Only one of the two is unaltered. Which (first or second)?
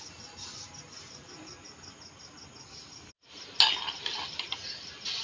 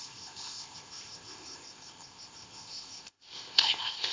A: first